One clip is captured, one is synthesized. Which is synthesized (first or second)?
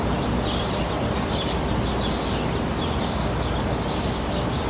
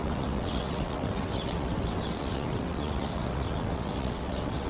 second